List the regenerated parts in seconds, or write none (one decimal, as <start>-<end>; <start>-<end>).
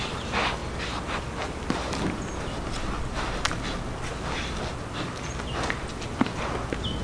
none